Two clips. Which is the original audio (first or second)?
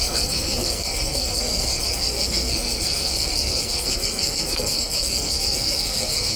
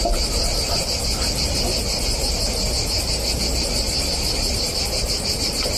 second